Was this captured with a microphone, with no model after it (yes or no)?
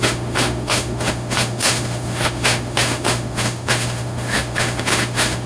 no